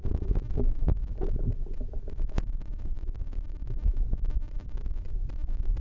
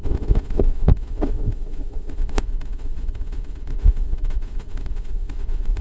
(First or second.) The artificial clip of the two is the second